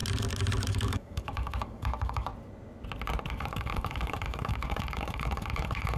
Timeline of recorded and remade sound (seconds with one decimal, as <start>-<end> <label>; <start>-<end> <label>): 0.0-0.7 recorded; 0.7-2.3 remade; 2.3-3.3 recorded; 3.3-6.0 remade

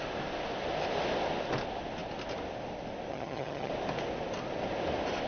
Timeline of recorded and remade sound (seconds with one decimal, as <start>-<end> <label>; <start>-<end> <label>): 0.0-3.1 recorded; 3.1-3.7 remade; 3.7-5.3 recorded

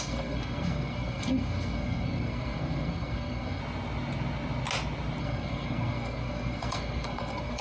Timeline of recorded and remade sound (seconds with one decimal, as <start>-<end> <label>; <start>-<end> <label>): 0.0-3.6 remade; 3.6-5.2 recorded; 5.2-7.6 remade

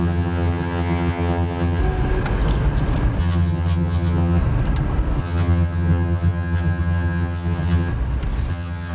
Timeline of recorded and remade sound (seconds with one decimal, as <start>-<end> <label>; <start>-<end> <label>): 0.0-1.8 remade; 1.8-3.2 recorded; 3.2-4.4 remade; 4.4-5.2 recorded; 5.2-7.9 remade; 7.9-8.5 recorded; 8.5-8.9 remade

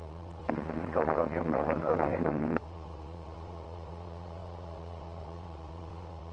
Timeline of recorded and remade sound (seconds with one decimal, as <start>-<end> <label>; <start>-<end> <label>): 0.0-6.3 remade

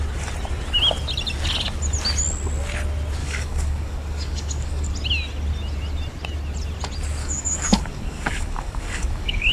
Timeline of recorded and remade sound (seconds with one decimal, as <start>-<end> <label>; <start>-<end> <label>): 0.0-3.2 recorded; 3.2-4.9 remade; 4.9-7.2 recorded; 7.2-9.5 remade

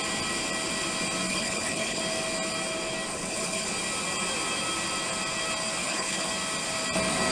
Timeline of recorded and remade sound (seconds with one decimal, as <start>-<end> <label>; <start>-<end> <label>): 0.0-1.3 recorded; 1.3-2.0 remade; 2.0-3.1 recorded; 3.1-3.7 remade; 3.7-5.8 recorded; 5.8-6.3 remade; 6.3-7.3 recorded